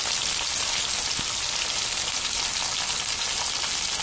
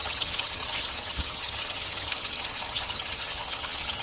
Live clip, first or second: first